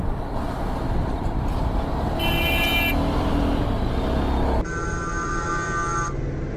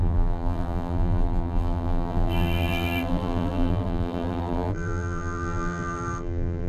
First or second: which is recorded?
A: first